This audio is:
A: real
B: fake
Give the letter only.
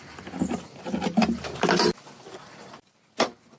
A